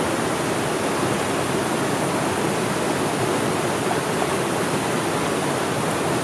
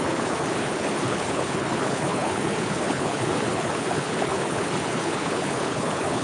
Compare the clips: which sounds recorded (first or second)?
first